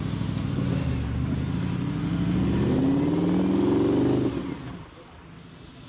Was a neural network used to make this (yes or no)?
no